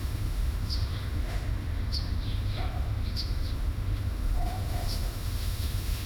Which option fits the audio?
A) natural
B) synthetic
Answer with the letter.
B